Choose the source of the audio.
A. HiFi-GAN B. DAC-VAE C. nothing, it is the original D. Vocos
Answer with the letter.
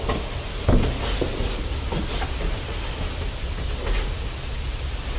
C